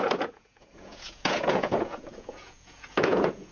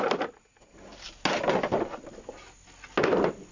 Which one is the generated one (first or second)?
first